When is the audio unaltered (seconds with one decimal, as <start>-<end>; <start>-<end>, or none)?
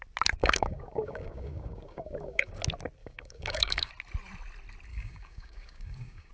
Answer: 0.0-0.4; 2.6-3.0; 3.9-4.9